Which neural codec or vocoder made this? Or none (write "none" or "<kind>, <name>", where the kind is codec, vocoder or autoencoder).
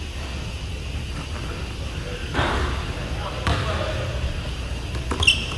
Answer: none